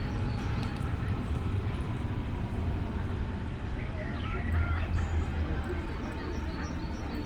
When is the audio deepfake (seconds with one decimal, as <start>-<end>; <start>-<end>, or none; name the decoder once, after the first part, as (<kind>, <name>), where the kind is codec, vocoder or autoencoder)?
0.7-2.9 (vocoder, BigVGAN v2)